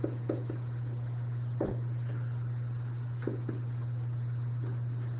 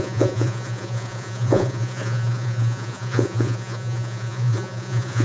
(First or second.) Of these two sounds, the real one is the first